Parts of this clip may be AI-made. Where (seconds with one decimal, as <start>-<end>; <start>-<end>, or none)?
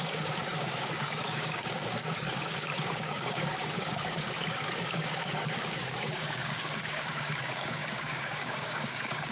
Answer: 0.0-9.3